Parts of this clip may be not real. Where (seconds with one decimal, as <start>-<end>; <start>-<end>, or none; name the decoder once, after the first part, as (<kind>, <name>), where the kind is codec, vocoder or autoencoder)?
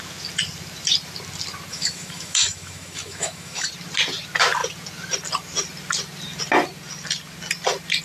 1.7-3.7 (autoencoder, DAC-VAE)